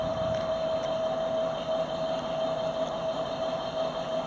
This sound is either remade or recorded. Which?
recorded